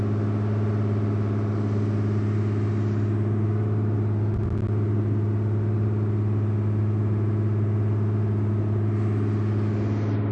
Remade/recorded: recorded